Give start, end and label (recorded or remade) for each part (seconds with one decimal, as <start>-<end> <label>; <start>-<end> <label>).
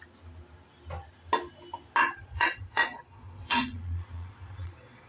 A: 0.0-2.0 recorded; 2.0-5.1 remade